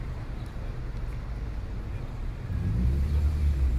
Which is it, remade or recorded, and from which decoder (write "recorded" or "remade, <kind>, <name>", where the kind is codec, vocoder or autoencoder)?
recorded